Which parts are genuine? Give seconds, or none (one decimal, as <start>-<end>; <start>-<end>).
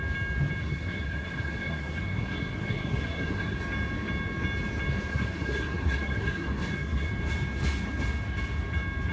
0.0-0.6; 3.6-5.1; 7.1-9.1